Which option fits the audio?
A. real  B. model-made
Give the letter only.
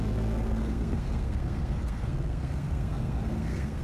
B